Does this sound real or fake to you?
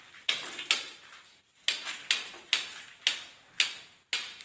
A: real